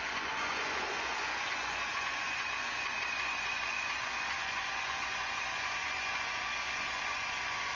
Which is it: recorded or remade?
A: remade